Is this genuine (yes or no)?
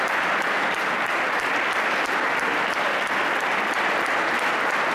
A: yes